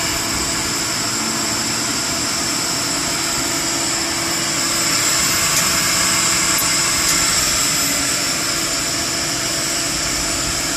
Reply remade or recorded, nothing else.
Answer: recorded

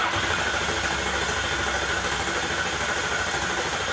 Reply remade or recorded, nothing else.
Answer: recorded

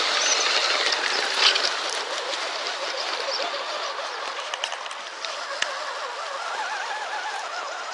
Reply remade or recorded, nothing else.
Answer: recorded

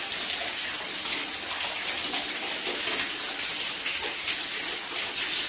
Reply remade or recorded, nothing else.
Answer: recorded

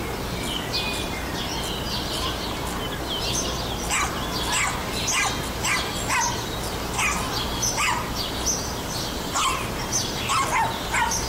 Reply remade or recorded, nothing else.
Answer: recorded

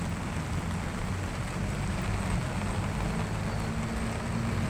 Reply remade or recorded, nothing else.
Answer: recorded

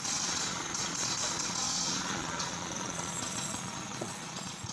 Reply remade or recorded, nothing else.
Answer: remade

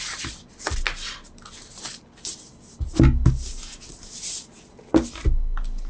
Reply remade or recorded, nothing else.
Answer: recorded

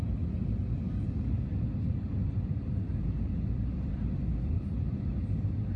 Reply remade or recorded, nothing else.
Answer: recorded